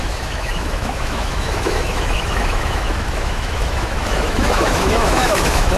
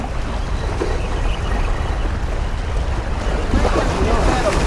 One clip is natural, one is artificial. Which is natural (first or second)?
second